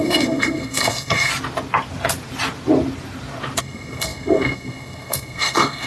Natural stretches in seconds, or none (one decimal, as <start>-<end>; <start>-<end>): 1.3-3.6